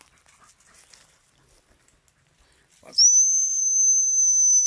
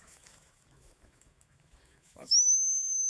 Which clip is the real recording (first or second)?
first